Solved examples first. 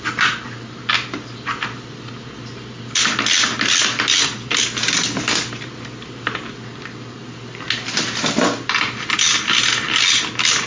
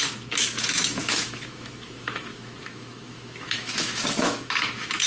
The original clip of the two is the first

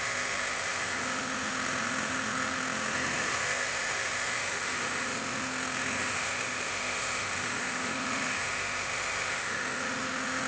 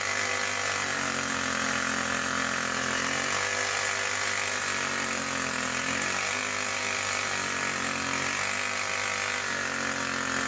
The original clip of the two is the second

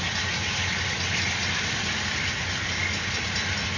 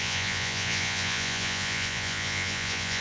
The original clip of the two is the first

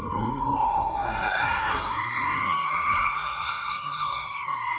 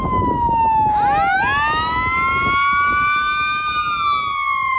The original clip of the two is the second